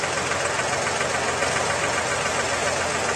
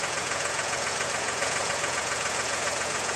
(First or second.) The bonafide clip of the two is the first